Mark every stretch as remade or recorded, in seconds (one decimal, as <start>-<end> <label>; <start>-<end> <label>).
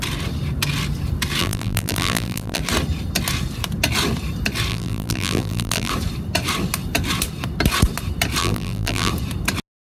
0.0-1.4 recorded; 1.4-2.6 remade; 2.6-4.7 recorded; 4.7-5.9 remade; 5.9-8.4 recorded; 8.4-9.1 remade; 9.1-9.9 recorded